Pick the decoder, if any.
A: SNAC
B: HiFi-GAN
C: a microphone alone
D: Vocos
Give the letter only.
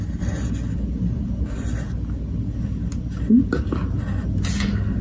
C